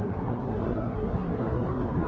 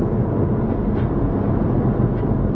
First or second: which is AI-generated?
first